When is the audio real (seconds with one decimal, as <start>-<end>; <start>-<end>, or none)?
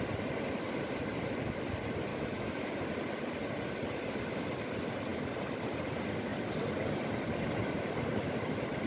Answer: 0.0-2.1; 2.7-8.9